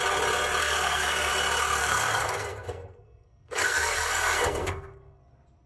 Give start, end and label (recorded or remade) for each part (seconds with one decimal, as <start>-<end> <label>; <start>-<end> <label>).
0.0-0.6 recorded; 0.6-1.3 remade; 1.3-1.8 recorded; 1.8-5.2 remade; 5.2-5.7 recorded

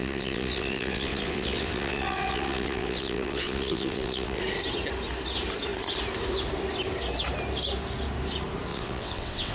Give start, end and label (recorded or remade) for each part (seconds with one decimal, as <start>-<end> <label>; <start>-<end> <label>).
0.0-4.4 remade; 4.4-8.7 recorded; 8.7-9.5 remade

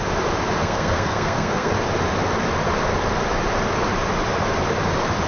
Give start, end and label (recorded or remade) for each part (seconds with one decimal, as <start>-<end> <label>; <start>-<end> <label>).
0.0-0.6 recorded; 0.6-1.7 remade; 1.7-5.3 recorded

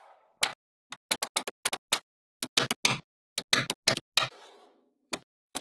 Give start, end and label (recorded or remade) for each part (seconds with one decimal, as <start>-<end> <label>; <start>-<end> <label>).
0.0-4.6 recorded; 4.6-5.6 remade